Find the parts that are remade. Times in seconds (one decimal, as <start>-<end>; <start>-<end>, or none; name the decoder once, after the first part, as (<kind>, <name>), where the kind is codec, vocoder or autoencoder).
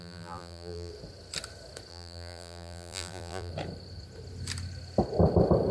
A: 0.0-0.9 (vocoder, BigVGAN v2); 1.9-3.5